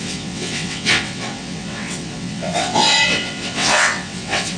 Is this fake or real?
fake